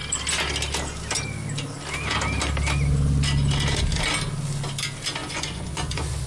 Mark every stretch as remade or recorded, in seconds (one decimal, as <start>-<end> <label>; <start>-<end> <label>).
0.0-5.2 recorded; 5.2-6.3 remade